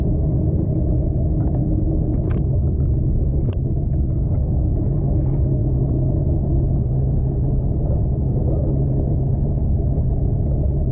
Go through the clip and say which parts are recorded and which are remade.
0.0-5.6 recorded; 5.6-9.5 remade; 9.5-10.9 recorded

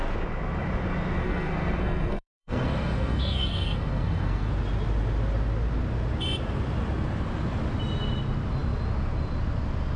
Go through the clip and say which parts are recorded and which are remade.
0.0-1.2 recorded; 1.2-4.5 remade; 4.5-10.0 recorded